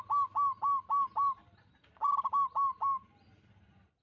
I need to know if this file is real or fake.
real